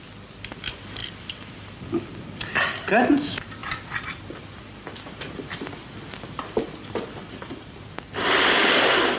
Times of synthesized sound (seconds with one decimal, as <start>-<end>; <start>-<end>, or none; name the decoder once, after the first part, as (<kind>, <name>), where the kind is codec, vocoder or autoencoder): none